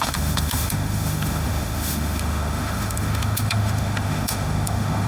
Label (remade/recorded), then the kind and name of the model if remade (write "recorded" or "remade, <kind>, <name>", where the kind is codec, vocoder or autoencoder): remade, autoencoder, DAC-VAE